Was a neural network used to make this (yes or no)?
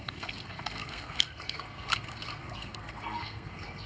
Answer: yes